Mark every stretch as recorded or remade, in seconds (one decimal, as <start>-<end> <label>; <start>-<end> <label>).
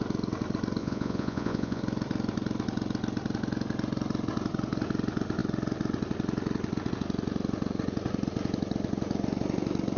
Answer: 0.0-0.8 recorded; 0.8-1.8 remade; 1.8-10.0 recorded